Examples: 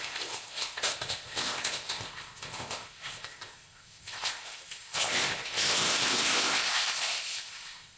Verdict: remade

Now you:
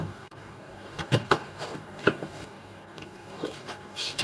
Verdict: remade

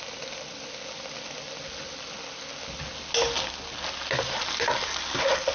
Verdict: recorded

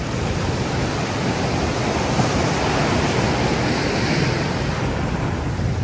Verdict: recorded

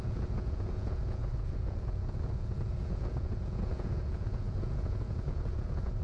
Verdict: remade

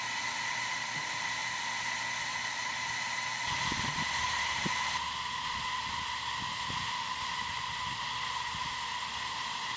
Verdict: recorded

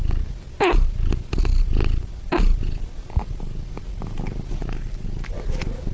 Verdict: recorded